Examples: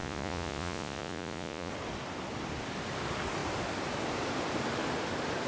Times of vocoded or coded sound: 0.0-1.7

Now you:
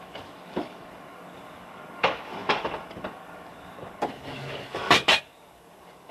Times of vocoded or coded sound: 0.0-6.1

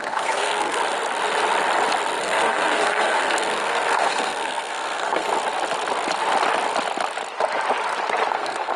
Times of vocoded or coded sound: 0.0-0.8; 2.2-5.3; 8.3-8.8